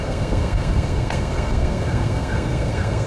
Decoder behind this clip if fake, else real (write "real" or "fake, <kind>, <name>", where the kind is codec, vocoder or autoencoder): fake, codec, SNAC